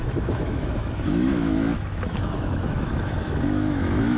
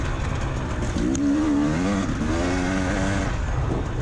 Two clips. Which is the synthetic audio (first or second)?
first